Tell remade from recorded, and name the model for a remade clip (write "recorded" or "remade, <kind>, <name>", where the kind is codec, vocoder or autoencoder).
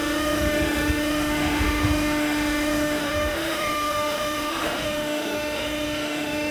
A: remade, autoencoder, DAC-VAE